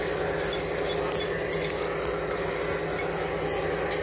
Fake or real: real